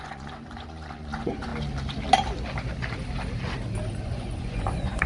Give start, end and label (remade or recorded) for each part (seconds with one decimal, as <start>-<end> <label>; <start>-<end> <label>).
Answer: 0.0-1.5 remade; 1.5-4.0 recorded; 4.0-5.1 remade